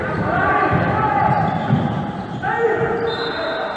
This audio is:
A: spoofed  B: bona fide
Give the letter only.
B